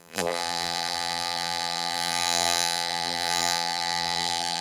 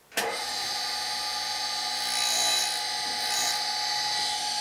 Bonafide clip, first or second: second